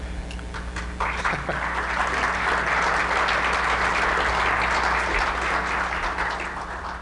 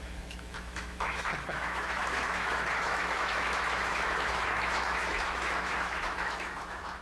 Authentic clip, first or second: first